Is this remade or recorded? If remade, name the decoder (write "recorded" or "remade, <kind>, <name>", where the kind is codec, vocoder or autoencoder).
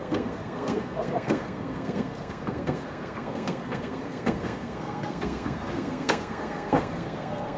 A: remade, codec, SNAC